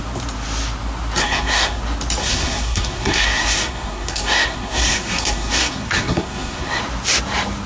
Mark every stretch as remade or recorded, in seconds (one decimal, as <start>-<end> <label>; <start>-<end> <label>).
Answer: 0.0-1.2 recorded; 1.2-1.8 remade; 1.8-2.2 recorded; 2.2-6.8 remade; 6.8-7.7 recorded